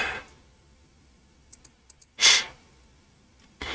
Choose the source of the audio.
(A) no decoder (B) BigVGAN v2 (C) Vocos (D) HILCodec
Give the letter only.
A